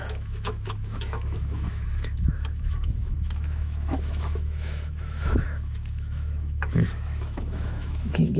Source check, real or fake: fake